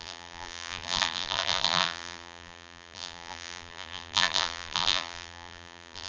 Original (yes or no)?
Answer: no